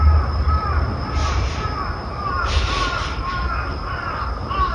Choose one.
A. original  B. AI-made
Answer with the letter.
A